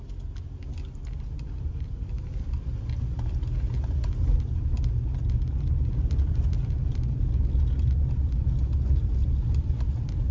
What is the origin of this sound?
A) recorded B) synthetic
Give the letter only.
A